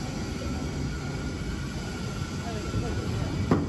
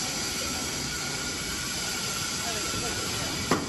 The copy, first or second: second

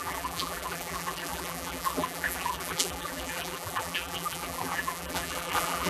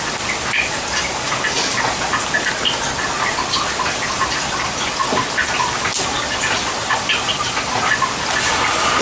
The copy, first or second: first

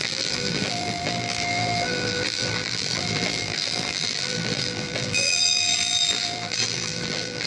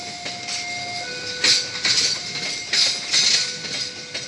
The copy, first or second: first